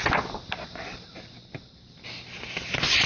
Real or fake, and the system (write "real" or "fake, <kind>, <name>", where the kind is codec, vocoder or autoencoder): real